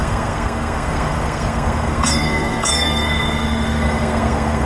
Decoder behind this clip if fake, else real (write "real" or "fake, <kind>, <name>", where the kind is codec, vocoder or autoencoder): fake, codec, SNAC